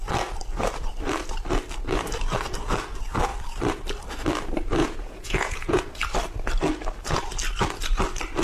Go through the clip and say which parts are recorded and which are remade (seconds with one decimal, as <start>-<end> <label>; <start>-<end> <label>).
0.0-4.8 recorded; 4.8-5.8 remade; 5.8-8.4 recorded